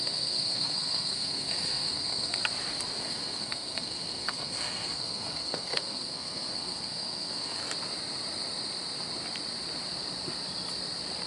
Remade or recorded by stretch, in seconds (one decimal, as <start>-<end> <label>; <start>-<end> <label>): 0.0-2.4 remade; 2.4-3.0 recorded; 3.0-7.6 remade; 7.6-11.3 recorded